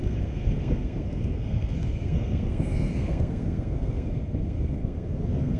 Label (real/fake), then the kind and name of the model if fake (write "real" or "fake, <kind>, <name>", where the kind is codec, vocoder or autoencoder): fake, codec, SNAC